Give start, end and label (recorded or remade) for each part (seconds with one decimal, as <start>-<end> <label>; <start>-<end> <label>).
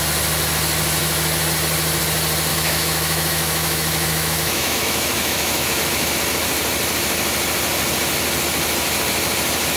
0.0-2.5 recorded; 2.5-6.1 remade; 6.1-9.8 recorded